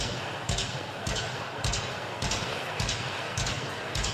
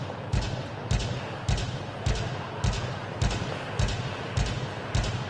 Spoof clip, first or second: first